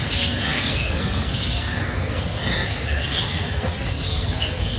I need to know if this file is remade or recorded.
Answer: remade